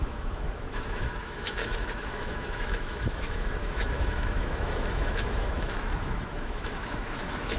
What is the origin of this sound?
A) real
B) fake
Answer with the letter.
B